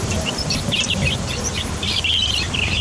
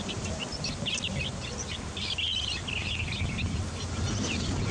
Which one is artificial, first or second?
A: first